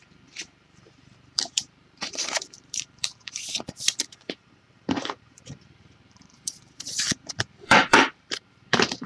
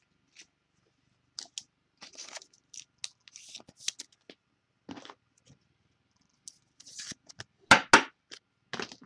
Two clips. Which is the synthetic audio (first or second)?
first